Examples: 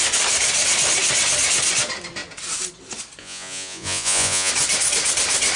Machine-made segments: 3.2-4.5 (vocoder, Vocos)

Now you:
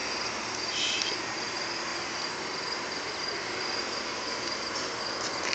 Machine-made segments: 0.0-5.5 (vocoder, BigVGAN v2)

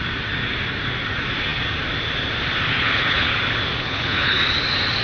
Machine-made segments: 2.7-3.3 (codec, HILCodec); 3.8-4.4